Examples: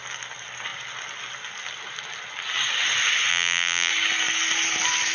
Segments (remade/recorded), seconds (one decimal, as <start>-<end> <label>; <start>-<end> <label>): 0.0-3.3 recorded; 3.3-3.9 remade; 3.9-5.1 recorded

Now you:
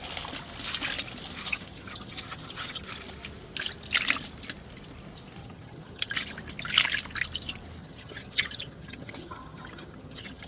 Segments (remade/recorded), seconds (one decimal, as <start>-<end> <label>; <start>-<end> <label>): 0.0-1.4 recorded; 1.4-2.9 remade; 2.9-5.4 recorded; 5.4-6.1 remade; 6.1-7.8 recorded; 7.8-10.5 remade

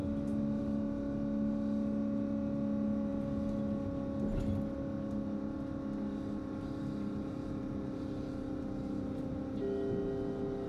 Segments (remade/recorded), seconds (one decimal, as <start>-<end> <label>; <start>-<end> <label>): 0.0-10.7 recorded

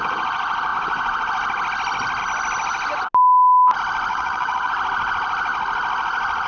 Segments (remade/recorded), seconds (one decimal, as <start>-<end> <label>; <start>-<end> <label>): 0.0-4.1 recorded; 4.1-4.7 remade; 4.7-6.5 recorded